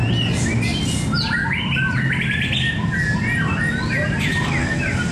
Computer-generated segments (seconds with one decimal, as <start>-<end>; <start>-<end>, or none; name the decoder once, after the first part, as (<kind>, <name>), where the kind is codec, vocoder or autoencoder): none